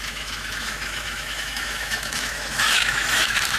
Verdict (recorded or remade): remade